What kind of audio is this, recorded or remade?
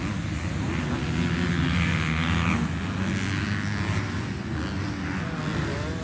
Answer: recorded